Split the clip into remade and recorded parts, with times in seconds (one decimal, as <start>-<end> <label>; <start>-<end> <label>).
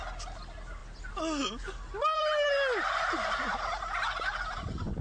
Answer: 0.0-5.0 recorded